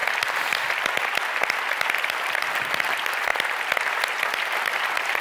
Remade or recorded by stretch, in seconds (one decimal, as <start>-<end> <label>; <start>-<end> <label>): 0.0-1.9 recorded; 1.9-3.3 remade; 3.3-4.3 recorded; 4.3-5.2 remade